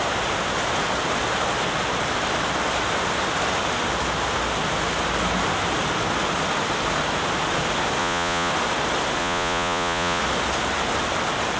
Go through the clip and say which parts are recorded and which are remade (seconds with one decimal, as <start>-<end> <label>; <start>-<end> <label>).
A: 0.0-8.0 recorded; 8.0-8.5 remade; 8.5-9.2 recorded; 9.2-10.2 remade; 10.2-11.6 recorded